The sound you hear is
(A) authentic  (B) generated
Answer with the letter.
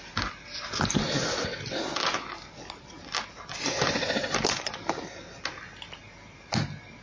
A